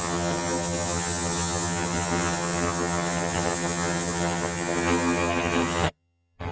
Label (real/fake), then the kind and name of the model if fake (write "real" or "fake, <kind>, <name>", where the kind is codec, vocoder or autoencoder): fake, vocoder, HiFi-GAN